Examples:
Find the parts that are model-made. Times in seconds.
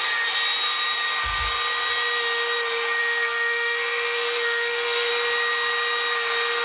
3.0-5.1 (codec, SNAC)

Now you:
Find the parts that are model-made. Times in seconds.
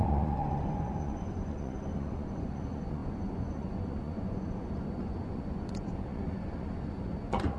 0.0-7.6 (vocoder, Vocos)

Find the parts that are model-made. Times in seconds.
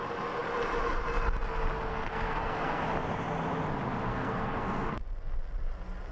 1.9-2.8 (codec, SNAC); 4.1-5.0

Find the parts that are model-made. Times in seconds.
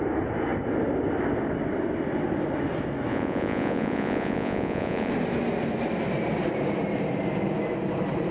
3.1-5.1 (vocoder, Vocos)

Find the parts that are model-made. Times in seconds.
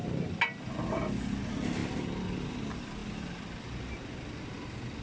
none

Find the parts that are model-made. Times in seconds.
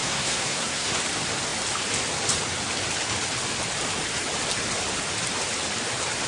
0.0-0.9 (codec, SNAC)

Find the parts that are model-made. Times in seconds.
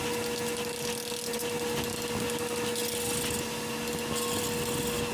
none